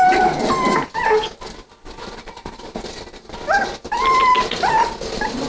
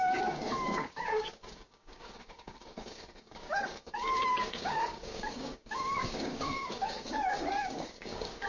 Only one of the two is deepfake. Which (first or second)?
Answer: second